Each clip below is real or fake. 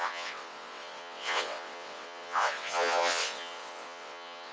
fake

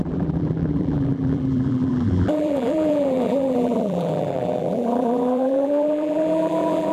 fake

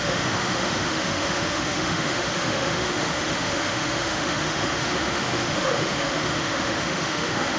fake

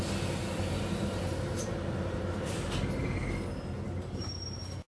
real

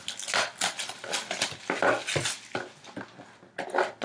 real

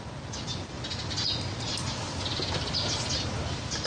real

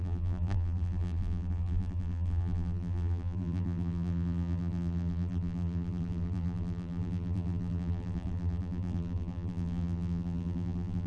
fake